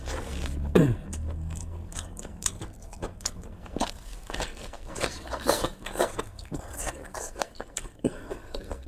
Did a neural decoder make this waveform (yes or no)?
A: yes